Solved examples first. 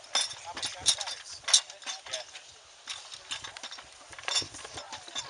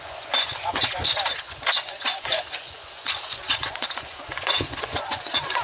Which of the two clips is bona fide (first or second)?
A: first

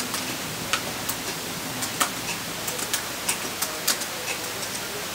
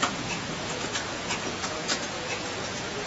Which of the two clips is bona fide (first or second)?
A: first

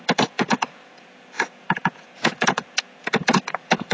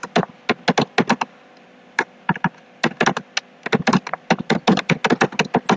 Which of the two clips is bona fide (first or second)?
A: second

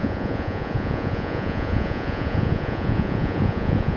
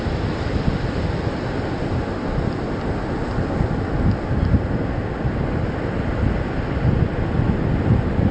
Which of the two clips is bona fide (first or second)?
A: second